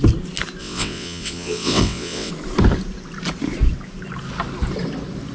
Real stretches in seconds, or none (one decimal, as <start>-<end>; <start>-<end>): 0.0-0.6; 2.3-5.3

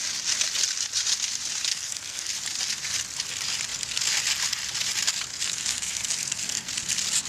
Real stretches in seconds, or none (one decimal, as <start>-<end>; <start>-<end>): 0.0-1.7; 2.3-5.3; 6.7-7.3